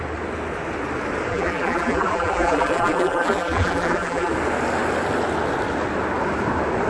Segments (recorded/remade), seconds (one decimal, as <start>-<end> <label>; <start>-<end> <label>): 0.0-1.3 recorded; 1.3-4.3 remade; 4.3-6.9 recorded